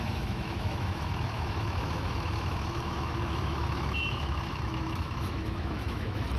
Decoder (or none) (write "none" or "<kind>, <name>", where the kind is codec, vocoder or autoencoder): autoencoder, DAC-VAE